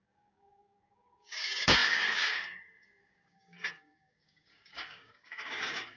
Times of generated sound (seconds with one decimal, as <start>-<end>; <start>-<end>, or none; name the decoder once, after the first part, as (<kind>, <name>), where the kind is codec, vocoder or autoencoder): 0.0-6.0 (codec, DAC)